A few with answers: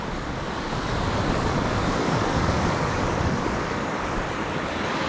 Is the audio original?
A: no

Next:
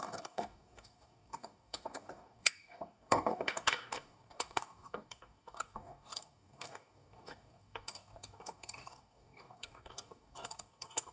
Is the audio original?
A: no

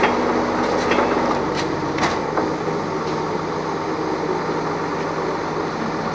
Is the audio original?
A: yes